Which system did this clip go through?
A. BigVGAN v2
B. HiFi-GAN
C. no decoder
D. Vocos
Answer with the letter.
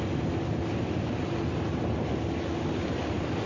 C